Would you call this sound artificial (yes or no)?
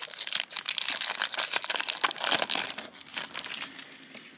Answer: no